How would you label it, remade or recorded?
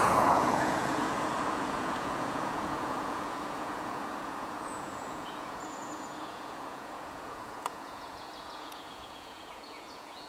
remade